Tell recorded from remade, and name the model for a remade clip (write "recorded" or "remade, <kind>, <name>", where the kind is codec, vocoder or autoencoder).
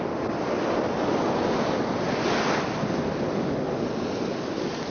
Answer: recorded